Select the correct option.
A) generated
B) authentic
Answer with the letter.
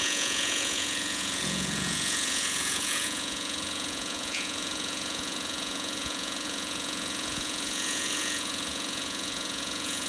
A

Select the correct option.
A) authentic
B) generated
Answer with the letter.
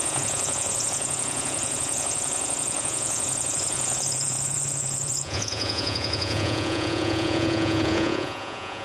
B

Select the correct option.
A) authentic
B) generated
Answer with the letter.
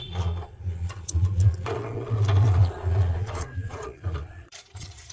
B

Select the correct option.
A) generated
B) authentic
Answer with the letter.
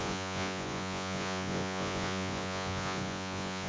A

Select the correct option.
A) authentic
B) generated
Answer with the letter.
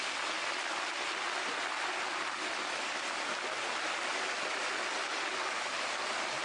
A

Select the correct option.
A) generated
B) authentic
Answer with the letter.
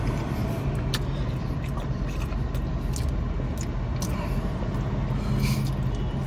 B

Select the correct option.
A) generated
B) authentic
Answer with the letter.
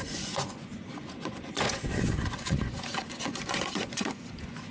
A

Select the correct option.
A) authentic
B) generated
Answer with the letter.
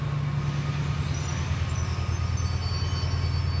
A